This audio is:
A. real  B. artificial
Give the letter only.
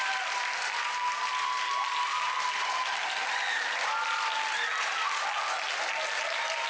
A